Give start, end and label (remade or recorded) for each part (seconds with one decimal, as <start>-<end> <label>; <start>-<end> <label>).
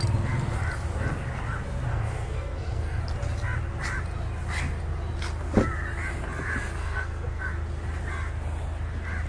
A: 0.0-1.9 recorded; 1.9-3.0 remade; 3.0-6.8 recorded; 6.8-7.5 remade; 7.5-9.3 recorded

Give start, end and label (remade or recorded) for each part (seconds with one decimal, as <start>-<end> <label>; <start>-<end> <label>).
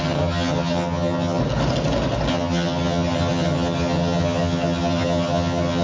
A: 0.0-1.4 remade; 1.4-2.3 recorded; 2.3-5.8 remade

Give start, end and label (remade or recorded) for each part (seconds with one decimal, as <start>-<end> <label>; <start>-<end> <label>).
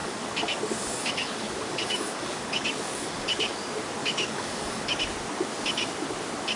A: 0.0-3.6 remade; 3.6-4.0 recorded; 4.0-5.0 remade; 5.0-6.6 recorded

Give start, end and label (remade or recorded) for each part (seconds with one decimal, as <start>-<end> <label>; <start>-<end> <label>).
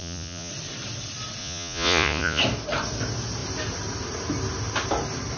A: 0.0-0.5 remade; 0.5-1.4 recorded; 1.4-2.4 remade; 2.4-5.4 recorded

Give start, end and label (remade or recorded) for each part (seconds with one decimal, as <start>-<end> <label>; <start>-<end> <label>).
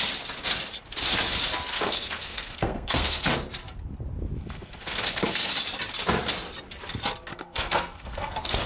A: 0.0-1.7 recorded; 1.7-3.3 remade; 3.3-4.4 recorded; 4.4-5.5 remade; 5.5-7.3 recorded; 7.3-8.7 remade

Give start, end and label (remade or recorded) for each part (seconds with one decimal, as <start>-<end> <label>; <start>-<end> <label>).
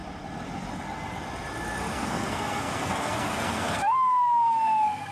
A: 0.0-1.9 recorded; 1.9-5.1 remade